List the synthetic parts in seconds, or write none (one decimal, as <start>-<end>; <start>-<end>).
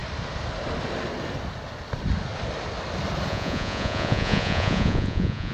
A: 3.3-5.5